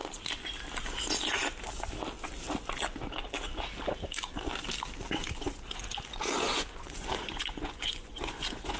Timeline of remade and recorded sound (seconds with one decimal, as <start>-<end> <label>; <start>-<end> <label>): 0.0-5.3 recorded; 5.3-5.8 remade; 5.8-6.3 recorded; 6.3-8.8 remade

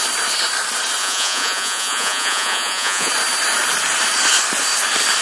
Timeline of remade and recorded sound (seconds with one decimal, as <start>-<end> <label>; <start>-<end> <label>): 0.0-1.0 recorded; 1.0-3.1 remade; 3.1-5.2 recorded